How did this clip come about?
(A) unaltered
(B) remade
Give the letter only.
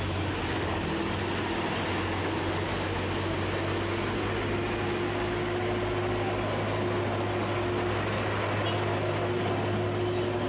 A